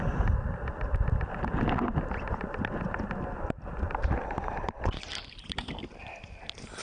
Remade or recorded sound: remade